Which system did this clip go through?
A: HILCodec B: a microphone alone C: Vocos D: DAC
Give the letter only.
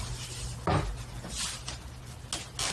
B